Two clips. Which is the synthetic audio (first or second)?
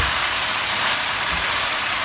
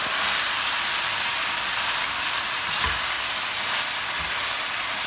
first